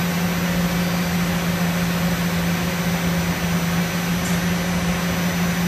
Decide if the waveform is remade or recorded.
recorded